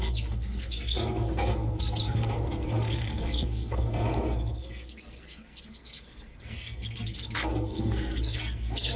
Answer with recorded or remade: remade